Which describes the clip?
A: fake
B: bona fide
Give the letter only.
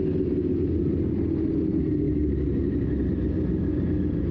B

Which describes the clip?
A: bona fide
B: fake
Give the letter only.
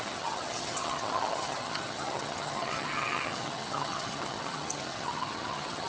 B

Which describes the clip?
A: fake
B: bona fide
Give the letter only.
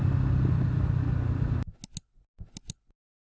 B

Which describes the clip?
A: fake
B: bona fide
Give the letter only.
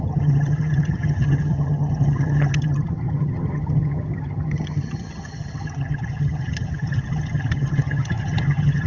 A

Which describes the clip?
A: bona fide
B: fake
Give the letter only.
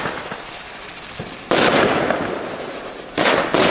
A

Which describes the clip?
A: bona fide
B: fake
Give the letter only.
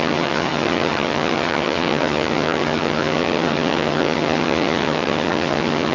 B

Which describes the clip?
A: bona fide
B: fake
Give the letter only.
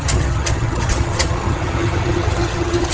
B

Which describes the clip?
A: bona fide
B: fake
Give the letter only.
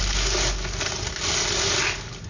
A